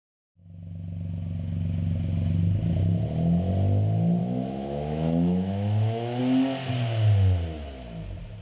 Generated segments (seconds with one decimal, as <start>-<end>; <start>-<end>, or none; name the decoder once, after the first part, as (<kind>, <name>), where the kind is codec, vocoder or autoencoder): 4.2-6.2 (autoencoder, DAC-VAE)